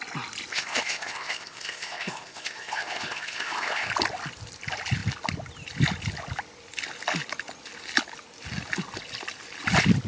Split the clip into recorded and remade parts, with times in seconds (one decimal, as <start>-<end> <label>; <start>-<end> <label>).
0.0-0.5 recorded; 0.5-3.9 remade; 3.9-10.1 recorded